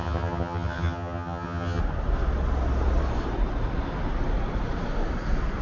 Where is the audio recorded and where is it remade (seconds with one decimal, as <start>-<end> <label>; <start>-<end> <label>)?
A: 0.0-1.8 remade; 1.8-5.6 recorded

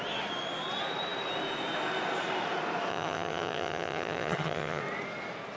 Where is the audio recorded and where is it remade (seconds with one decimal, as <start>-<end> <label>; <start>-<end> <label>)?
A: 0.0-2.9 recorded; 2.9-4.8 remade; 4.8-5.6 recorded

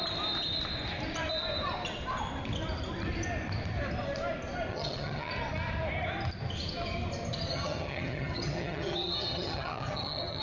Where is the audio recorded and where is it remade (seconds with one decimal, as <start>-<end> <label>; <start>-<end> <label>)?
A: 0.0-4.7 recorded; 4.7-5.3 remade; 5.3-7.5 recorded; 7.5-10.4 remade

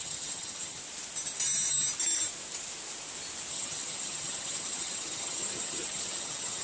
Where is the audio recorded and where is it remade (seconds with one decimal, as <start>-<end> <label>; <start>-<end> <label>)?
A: 0.0-0.8 remade; 0.8-3.5 recorded; 3.5-6.6 remade

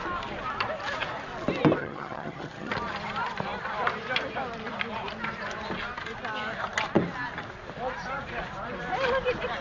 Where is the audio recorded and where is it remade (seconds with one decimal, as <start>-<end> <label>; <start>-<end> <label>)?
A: 0.0-1.8 recorded; 1.8-2.7 remade; 2.7-9.6 recorded

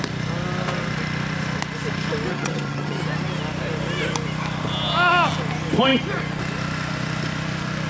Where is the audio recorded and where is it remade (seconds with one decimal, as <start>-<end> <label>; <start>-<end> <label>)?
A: 0.0-2.3 recorded; 2.3-3.0 remade; 3.0-7.9 recorded

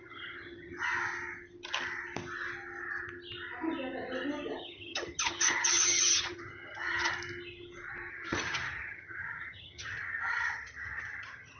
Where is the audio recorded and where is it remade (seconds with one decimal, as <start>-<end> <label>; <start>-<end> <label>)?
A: 0.0-0.7 remade; 0.7-4.6 recorded; 4.6-7.1 remade; 7.1-8.1 recorded; 8.1-11.6 remade

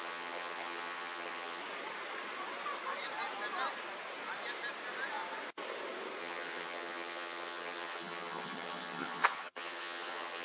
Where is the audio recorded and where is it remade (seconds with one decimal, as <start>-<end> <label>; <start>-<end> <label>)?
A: 0.0-1.6 remade; 1.6-6.2 recorded; 6.2-10.4 remade